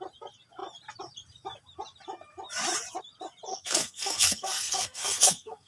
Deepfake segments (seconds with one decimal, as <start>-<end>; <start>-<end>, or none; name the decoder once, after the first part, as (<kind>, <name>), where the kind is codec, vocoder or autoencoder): 3.5-5.7 (codec, SNAC)